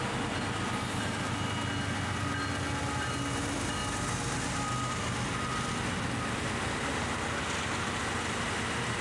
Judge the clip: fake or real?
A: real